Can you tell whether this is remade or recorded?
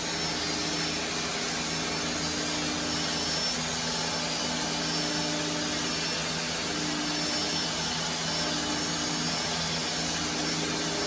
recorded